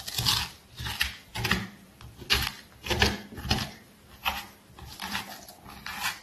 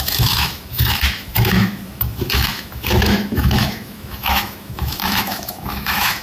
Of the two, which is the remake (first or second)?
second